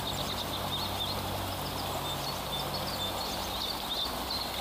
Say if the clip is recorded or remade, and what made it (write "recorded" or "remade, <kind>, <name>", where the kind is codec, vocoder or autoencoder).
recorded